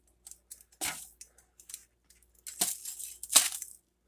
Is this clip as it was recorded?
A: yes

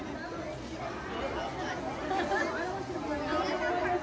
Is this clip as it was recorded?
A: yes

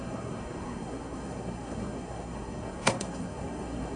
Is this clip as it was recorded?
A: no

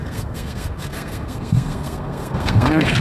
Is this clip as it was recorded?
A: no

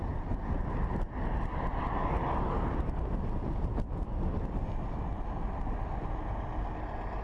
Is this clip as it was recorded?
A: yes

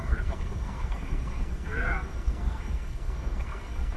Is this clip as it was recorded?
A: no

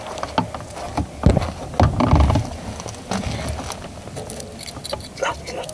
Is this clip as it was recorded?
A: yes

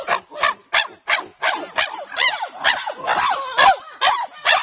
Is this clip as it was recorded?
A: yes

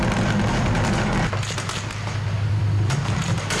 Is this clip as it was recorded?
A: yes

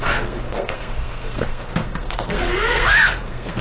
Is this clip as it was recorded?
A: no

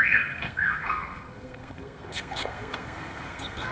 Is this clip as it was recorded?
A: no